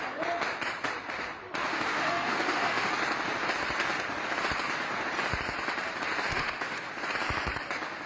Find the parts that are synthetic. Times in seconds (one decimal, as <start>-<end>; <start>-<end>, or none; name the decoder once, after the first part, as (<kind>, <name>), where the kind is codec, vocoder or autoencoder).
1.7-2.9 (autoencoder, DAC-VAE); 6.3-6.9